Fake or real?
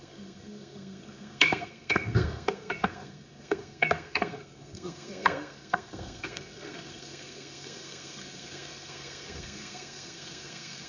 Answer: fake